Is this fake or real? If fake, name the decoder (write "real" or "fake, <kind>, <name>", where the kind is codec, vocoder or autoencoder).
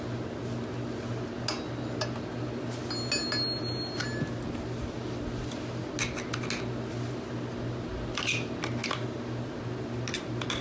real